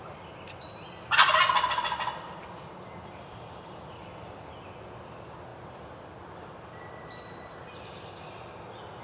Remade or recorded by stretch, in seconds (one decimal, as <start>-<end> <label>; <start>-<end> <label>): 0.0-9.0 recorded